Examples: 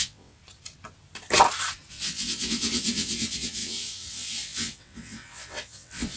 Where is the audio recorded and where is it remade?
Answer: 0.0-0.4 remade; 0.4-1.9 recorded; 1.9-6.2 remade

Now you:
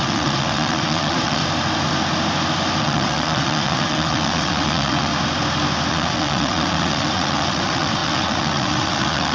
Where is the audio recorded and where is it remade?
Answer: 0.0-1.4 remade; 1.4-2.8 recorded; 2.8-5.1 remade; 5.1-5.9 recorded; 5.9-9.3 remade

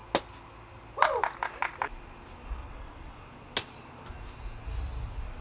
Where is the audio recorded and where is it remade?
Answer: 0.0-2.6 recorded; 2.6-3.2 remade; 3.2-5.4 recorded

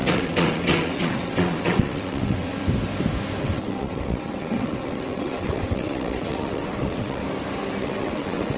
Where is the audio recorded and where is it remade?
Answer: 0.0-2.5 remade; 2.5-3.4 recorded; 3.4-7.2 remade; 7.2-7.8 recorded; 7.8-8.6 remade

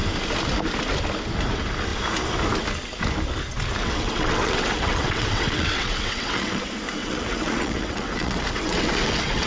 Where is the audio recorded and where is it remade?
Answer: 0.0-3.8 recorded; 3.8-6.6 remade; 6.6-7.0 recorded; 7.0-9.5 remade